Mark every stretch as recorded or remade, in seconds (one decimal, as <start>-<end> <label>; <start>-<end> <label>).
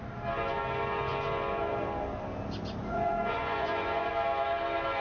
0.0-2.8 recorded; 2.8-4.1 remade; 4.1-5.0 recorded